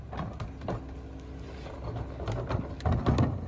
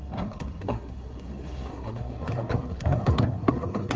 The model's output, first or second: second